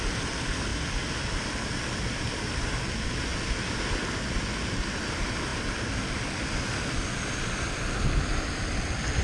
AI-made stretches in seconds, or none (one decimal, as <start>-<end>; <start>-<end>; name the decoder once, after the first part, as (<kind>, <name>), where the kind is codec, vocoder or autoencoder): none